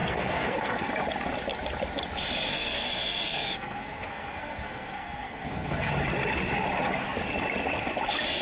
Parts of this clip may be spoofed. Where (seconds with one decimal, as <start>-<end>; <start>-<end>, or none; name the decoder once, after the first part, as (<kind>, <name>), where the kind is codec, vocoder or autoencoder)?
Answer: 0.0-0.9 (codec, SNAC); 2.5-5.9